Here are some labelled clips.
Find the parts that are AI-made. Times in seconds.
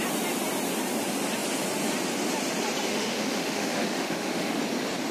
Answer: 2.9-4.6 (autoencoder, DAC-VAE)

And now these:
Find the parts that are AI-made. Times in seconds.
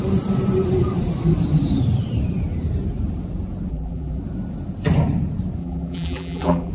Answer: 3.7-4.2 (vocoder, BigVGAN v2); 5.6-6.7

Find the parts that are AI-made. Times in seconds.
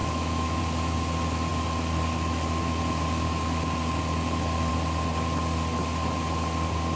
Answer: 0.0-0.6 (autoencoder, DAC-VAE)